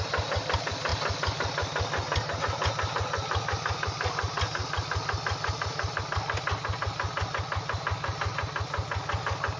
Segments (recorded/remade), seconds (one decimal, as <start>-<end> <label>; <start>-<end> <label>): 0.0-9.6 recorded